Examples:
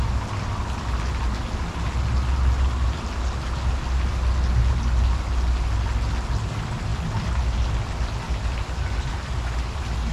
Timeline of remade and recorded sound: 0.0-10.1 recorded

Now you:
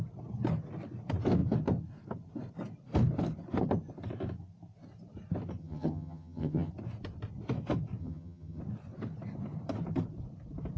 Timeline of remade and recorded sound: 0.0-5.6 recorded; 5.6-6.7 remade; 6.7-8.0 recorded; 8.0-8.6 remade; 8.6-10.8 recorded

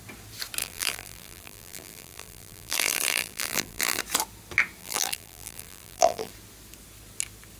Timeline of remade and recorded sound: 0.0-0.6 recorded; 0.6-4.0 remade; 4.0-4.8 recorded; 4.8-6.3 remade; 6.3-7.6 recorded

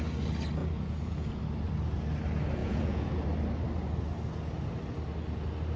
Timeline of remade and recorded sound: 0.0-0.6 recorded; 0.6-1.4 remade; 1.4-2.6 recorded; 2.6-3.2 remade; 3.2-5.8 recorded

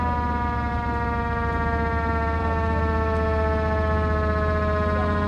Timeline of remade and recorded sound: 0.0-5.3 recorded